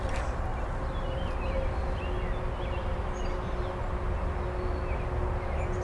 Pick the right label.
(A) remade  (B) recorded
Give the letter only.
B